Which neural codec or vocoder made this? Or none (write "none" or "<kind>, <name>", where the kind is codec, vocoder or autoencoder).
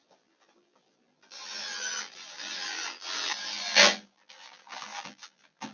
vocoder, BigVGAN v2